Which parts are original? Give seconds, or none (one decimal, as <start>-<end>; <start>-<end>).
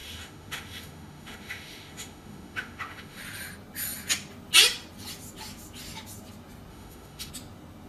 3.2-6.7; 7.3-7.9